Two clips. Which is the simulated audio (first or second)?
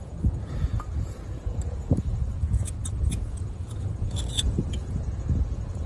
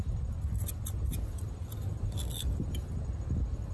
first